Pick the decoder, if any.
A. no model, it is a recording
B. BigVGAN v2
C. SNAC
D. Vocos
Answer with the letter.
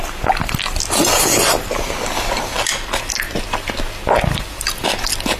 A